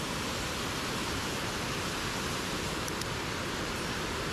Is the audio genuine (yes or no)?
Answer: yes